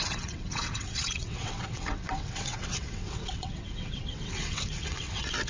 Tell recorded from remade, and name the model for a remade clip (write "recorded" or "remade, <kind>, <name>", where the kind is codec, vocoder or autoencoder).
remade, vocoder, WaveNeXt